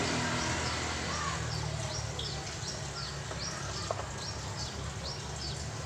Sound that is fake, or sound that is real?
real